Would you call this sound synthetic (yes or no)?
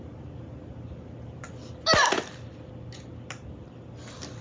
no